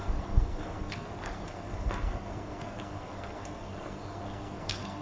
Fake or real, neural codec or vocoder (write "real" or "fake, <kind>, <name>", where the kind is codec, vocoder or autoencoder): fake, codec, SNAC